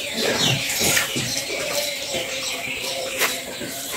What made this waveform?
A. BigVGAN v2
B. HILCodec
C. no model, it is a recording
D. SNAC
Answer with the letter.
A